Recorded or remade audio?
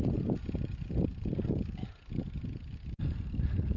recorded